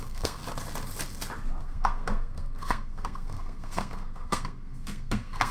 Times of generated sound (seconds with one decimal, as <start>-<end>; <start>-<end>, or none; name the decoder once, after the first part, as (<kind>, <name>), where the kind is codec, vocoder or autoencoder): 0.0-0.4 (codec, SNAC); 1.6-5.5